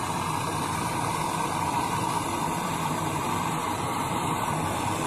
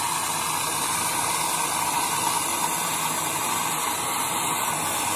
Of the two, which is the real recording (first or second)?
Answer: second